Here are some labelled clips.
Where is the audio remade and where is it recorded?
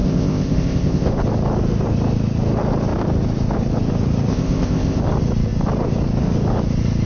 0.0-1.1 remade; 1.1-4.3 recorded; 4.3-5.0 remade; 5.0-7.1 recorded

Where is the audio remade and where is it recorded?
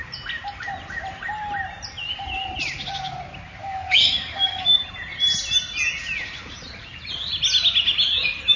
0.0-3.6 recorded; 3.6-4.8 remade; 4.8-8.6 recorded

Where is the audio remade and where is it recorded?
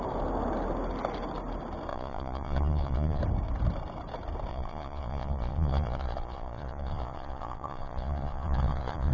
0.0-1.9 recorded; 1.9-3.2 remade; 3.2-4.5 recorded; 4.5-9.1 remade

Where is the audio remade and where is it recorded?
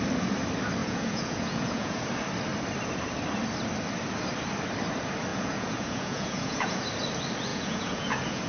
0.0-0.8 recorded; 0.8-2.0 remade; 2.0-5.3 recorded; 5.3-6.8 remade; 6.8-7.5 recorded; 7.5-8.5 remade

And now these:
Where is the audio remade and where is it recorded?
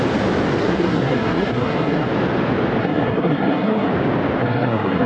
0.0-0.6 recorded; 0.6-2.1 remade; 2.1-2.8 recorded; 2.8-3.9 remade; 3.9-4.4 recorded; 4.4-5.1 remade